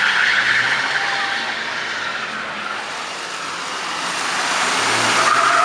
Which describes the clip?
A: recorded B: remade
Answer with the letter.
A